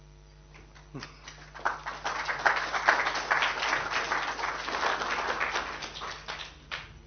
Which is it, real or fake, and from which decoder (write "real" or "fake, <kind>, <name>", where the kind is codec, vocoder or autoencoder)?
real